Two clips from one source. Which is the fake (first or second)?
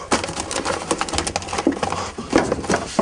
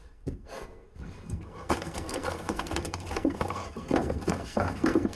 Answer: second